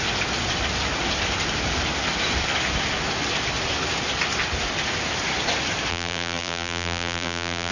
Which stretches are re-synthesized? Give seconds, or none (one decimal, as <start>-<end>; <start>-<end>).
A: 5.9-7.7